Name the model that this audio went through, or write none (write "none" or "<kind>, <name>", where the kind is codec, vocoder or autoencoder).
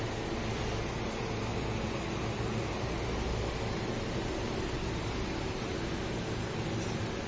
none